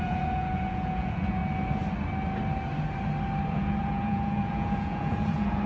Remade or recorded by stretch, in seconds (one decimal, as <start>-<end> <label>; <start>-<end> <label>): 0.0-1.4 remade; 1.4-3.5 recorded; 3.5-5.7 remade